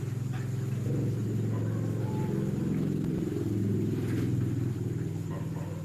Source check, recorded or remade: recorded